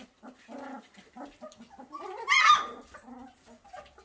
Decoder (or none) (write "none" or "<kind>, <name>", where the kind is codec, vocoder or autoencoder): none